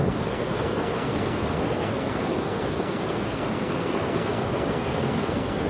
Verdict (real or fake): fake